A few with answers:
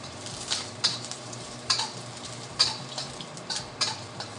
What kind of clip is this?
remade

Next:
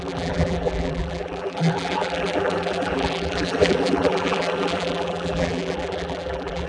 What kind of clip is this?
remade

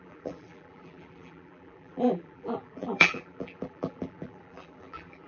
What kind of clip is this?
remade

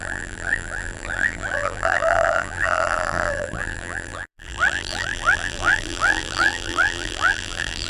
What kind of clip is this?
remade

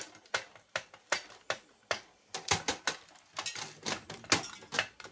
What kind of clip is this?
recorded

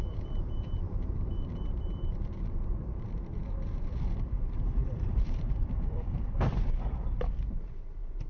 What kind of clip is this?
remade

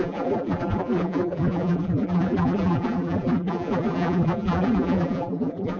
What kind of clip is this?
remade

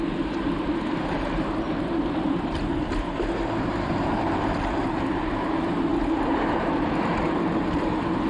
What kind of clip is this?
remade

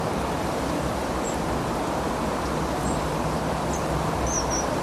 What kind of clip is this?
remade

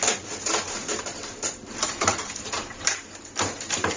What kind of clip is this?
remade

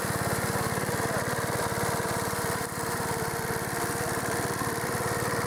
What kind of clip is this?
remade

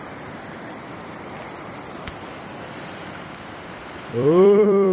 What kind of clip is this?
remade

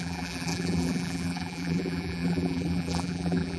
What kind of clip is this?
remade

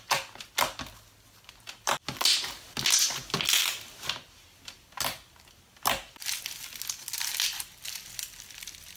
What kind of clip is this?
recorded